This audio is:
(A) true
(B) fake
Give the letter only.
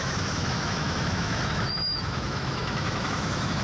B